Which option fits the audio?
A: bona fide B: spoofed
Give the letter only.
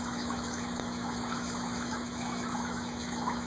B